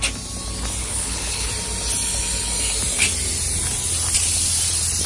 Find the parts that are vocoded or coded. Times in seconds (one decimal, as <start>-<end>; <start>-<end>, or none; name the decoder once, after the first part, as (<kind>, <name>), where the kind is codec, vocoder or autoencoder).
0.8-1.5 (codec, HILCodec)

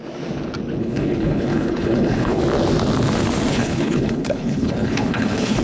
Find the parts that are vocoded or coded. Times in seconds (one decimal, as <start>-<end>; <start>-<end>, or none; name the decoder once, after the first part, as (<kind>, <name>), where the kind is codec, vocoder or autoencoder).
0.8-2.4 (codec, HILCodec); 3.5-5.6

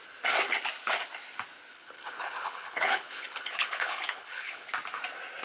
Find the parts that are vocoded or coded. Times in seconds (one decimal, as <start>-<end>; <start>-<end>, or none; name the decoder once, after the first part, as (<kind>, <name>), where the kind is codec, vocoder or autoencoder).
1.7-4.7 (codec, HILCodec)

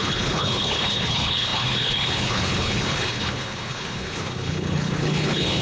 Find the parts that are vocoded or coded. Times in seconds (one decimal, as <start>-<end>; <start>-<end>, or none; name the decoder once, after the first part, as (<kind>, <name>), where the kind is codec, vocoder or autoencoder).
0.0-5.6 (codec, HILCodec)

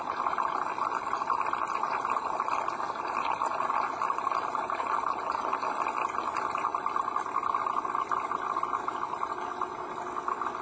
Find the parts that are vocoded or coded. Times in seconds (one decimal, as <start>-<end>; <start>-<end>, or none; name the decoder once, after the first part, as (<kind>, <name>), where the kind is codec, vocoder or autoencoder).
none

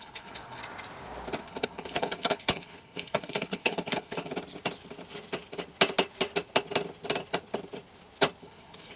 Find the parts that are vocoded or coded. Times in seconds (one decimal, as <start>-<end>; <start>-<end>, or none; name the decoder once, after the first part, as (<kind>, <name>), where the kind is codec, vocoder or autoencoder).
0.0-0.6 (codec, HILCodec); 1.4-4.3; 8.4-9.0

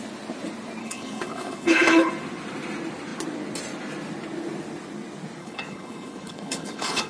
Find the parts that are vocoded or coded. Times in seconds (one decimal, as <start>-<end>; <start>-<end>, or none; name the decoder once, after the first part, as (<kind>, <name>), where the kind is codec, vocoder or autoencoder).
0.8-2.1 (codec, HILCodec); 5.4-7.1

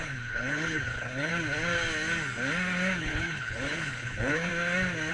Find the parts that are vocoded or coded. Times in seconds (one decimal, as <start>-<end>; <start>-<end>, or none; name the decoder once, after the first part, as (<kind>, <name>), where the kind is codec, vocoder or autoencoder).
0.0-1.3 (codec, HILCodec); 3.0-4.5